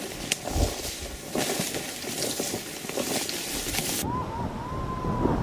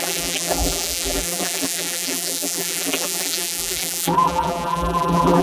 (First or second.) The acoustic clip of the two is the first